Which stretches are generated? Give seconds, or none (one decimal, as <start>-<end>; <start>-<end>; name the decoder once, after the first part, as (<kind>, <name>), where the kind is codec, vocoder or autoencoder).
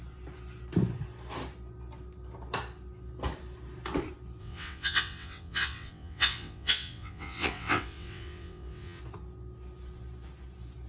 4.4-9.0 (vocoder, WaveNeXt)